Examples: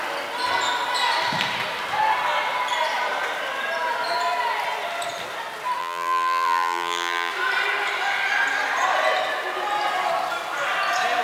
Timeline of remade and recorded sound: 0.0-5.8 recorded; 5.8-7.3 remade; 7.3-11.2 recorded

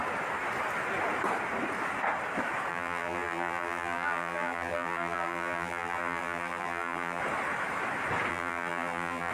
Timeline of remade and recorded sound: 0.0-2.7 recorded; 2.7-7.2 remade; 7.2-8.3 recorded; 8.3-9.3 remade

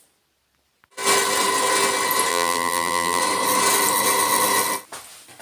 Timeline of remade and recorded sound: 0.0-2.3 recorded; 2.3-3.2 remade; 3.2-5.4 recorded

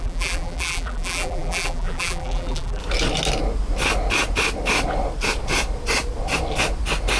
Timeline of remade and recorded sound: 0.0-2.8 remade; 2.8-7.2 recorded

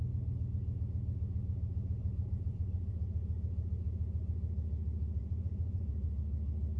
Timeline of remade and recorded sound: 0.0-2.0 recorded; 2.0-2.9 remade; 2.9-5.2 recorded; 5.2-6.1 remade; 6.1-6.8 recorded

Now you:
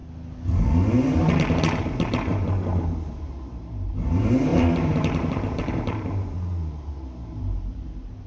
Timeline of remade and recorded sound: 0.0-1.8 recorded; 1.8-8.3 remade